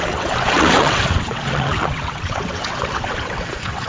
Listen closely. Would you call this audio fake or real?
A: fake